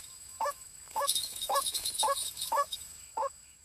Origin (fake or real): fake